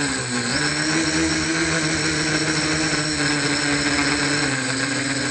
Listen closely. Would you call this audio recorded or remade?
recorded